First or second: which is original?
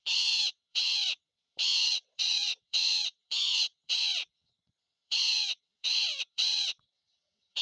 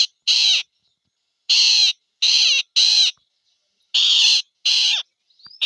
second